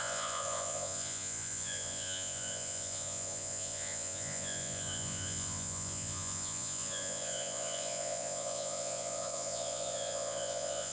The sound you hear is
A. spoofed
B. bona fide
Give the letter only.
A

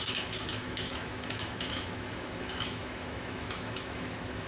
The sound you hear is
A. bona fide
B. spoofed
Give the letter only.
B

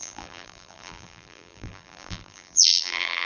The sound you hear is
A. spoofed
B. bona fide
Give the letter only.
A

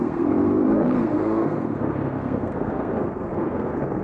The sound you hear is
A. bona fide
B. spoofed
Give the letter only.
B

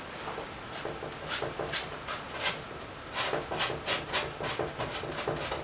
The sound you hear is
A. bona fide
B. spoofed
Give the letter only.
A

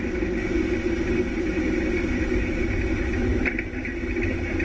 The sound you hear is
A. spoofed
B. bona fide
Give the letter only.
B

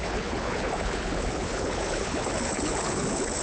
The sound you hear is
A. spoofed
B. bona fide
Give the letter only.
A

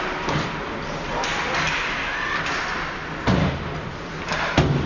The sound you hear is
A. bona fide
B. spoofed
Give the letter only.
A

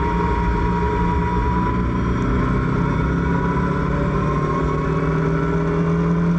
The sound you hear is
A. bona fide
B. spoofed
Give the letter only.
A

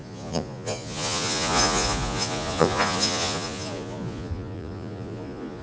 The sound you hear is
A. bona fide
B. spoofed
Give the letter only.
B